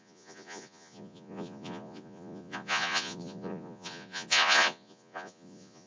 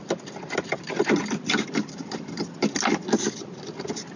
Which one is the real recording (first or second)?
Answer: second